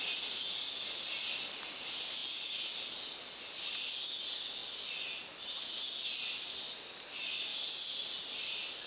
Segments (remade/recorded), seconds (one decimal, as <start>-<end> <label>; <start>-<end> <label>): 0.0-7.5 recorded; 7.5-8.2 remade; 8.2-8.9 recorded